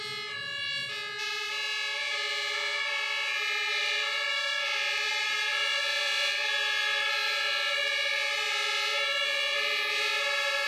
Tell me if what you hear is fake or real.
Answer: real